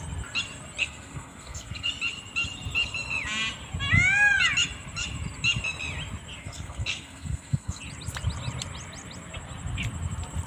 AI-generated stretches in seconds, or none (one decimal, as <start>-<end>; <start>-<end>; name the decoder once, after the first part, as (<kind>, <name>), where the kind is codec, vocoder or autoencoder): 0.8-1.9 (codec, SNAC); 6.4-7.8